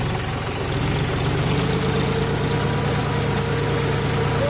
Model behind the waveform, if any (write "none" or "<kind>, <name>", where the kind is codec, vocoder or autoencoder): none